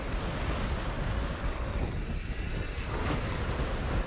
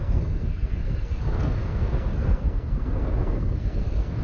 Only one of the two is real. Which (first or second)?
first